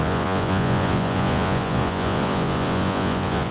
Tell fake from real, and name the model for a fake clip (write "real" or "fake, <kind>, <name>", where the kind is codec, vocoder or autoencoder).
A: fake, vocoder, Vocos